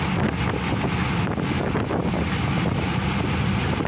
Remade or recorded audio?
recorded